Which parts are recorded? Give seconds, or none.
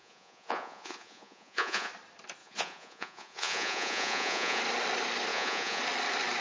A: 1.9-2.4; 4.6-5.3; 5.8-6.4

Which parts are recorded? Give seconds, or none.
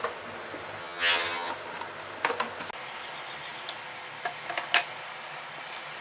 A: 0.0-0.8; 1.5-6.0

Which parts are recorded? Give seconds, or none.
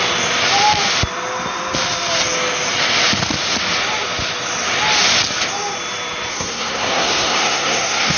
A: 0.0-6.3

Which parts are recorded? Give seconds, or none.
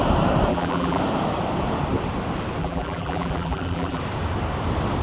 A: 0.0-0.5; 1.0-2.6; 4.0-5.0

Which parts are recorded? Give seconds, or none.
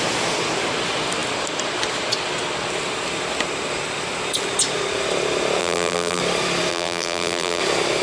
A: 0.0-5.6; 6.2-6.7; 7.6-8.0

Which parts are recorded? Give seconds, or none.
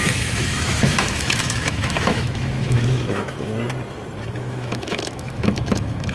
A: 3.5-4.3